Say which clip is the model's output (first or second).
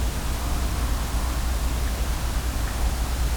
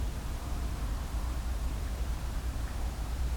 second